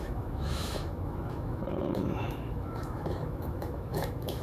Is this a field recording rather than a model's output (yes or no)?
no